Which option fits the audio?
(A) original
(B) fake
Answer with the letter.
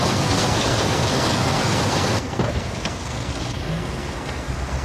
B